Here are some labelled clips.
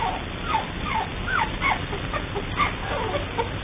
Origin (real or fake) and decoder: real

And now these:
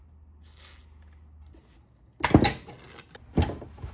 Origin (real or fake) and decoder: real